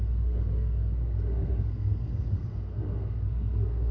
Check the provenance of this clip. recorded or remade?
remade